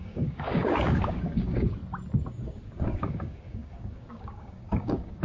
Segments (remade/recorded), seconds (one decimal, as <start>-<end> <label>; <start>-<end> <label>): 0.0-1.8 remade; 1.8-2.3 recorded; 2.3-5.2 remade